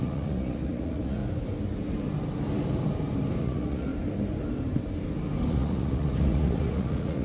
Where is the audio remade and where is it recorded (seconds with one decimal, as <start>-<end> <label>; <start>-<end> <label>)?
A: 0.0-1.2 remade; 1.2-3.4 recorded; 3.4-3.9 remade; 3.9-5.5 recorded; 5.5-7.2 remade